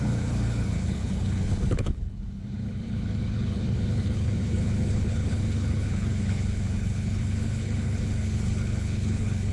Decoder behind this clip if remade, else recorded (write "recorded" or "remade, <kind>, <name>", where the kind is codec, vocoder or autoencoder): remade, codec, HILCodec